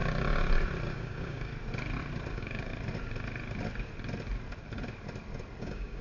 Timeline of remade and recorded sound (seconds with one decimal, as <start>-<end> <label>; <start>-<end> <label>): 0.0-0.9 recorded; 0.9-1.5 remade; 1.5-2.3 recorded; 2.3-2.7 remade; 2.7-5.6 recorded; 5.6-6.0 remade